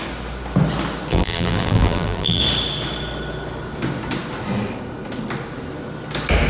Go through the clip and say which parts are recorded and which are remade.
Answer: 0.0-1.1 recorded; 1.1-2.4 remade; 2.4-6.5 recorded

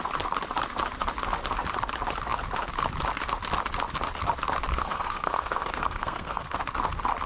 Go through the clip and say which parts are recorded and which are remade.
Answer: 0.0-4.7 recorded; 4.7-6.6 remade; 6.6-7.3 recorded

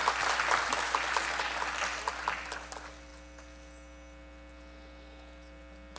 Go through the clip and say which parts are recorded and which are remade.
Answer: 0.0-6.0 recorded

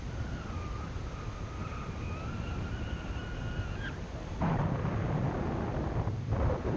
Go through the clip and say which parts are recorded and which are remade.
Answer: 0.0-6.8 recorded

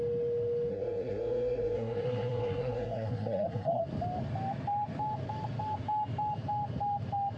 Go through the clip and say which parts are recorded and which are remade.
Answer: 0.0-0.7 recorded; 0.7-3.8 remade; 3.8-7.4 recorded

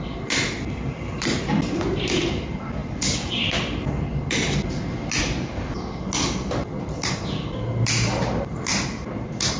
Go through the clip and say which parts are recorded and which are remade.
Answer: 0.0-9.6 recorded

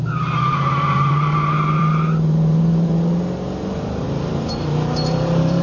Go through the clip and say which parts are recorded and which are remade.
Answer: 0.0-2.9 remade; 2.9-4.0 recorded; 4.0-5.6 remade

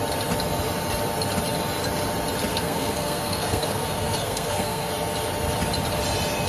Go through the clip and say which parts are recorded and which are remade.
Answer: 0.0-2.5 recorded; 2.5-4.9 remade; 4.9-6.5 recorded